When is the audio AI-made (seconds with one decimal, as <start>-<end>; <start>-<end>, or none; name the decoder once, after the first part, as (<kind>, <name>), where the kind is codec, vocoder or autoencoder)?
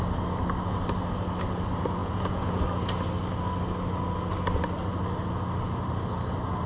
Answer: 2.0-2.6 (vocoder, Vocos)